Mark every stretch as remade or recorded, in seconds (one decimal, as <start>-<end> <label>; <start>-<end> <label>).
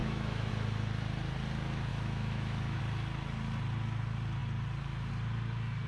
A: 0.0-0.5 remade; 0.5-1.9 recorded; 1.9-2.8 remade; 2.8-5.9 recorded